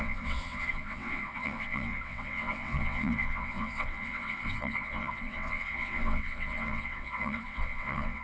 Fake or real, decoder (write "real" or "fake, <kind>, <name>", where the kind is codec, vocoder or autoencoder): fake, vocoder, WaveNeXt